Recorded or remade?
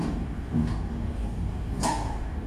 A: remade